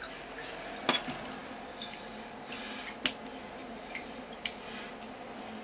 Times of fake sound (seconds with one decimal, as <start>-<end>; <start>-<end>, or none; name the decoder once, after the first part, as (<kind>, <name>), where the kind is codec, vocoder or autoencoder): 3.6-4.9 (vocoder, BigVGAN v2)